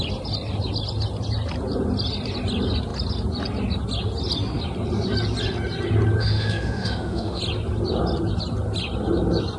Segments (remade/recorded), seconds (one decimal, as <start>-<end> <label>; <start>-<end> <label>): 0.0-6.2 recorded; 6.2-7.4 remade; 7.4-9.6 recorded

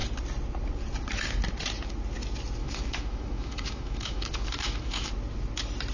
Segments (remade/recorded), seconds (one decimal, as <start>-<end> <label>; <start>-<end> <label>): 0.0-2.6 recorded; 2.6-5.1 remade; 5.1-5.9 recorded

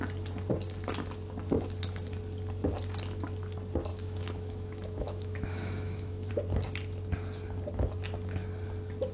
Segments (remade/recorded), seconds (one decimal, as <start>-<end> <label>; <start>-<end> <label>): 0.0-3.9 recorded; 3.9-6.3 remade; 6.3-9.1 recorded

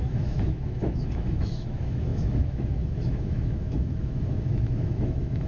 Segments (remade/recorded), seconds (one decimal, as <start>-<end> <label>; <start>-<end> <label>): 0.0-5.5 remade

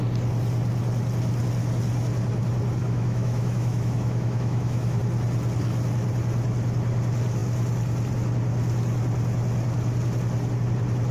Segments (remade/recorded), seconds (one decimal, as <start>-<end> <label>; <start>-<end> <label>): 0.0-2.8 recorded; 2.8-5.0 remade; 5.0-11.1 recorded

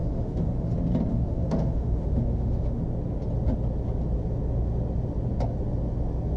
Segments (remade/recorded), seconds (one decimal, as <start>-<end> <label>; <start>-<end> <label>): 0.0-0.7 remade; 0.7-1.1 recorded; 1.1-2.8 remade; 2.8-6.4 recorded